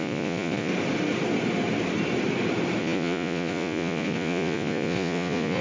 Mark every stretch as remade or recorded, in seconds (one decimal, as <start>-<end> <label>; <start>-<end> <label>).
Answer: 0.0-0.7 remade; 0.7-2.8 recorded; 2.8-5.6 remade